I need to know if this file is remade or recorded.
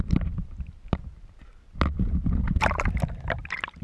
recorded